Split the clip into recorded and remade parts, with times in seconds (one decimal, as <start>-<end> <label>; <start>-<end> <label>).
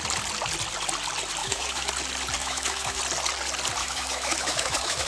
0.0-1.4 recorded; 1.4-1.9 remade; 1.9-2.4 recorded; 2.4-3.0 remade; 3.0-3.8 recorded; 3.8-5.1 remade